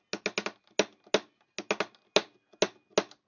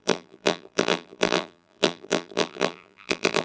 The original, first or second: first